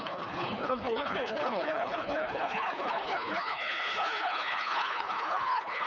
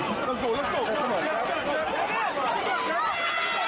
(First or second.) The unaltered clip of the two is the second